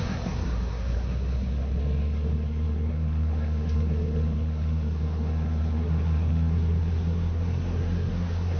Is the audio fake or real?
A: fake